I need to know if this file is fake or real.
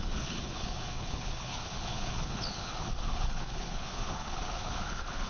fake